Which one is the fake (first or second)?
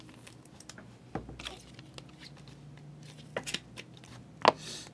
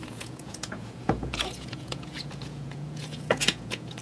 second